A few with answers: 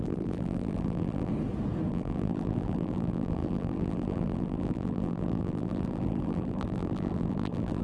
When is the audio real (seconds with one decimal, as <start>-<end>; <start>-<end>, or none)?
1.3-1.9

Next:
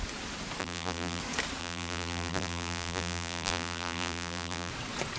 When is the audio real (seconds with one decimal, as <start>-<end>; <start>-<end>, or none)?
0.0-0.6; 1.2-1.6; 4.7-5.2

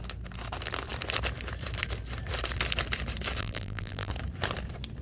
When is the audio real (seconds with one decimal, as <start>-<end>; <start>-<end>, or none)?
0.0-3.4; 4.1-5.0

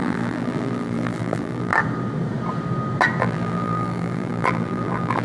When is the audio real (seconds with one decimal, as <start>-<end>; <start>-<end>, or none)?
1.7-3.2

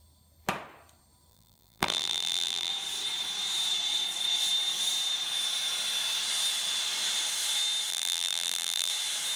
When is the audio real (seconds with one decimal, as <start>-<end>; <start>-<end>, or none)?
0.0-1.3; 2.7-7.9; 8.9-9.4

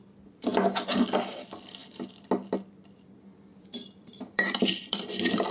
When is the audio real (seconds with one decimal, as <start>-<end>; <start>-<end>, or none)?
0.0-3.5